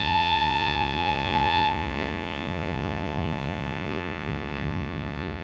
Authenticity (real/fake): fake